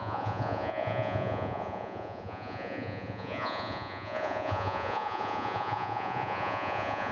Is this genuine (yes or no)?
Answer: no